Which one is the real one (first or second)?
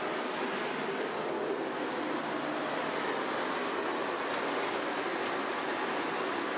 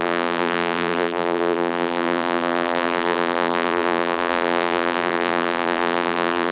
first